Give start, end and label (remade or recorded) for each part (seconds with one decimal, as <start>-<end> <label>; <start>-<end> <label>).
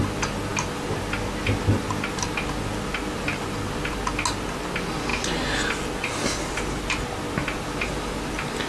0.0-8.7 recorded